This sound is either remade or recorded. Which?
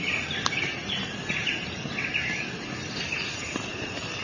recorded